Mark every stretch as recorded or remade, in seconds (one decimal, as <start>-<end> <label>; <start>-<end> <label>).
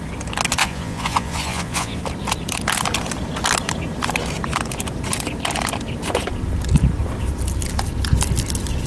0.0-0.6 recorded; 0.6-2.0 remade; 2.0-8.9 recorded